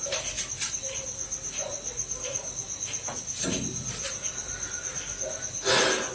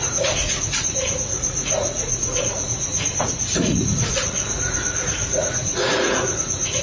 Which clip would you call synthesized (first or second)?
second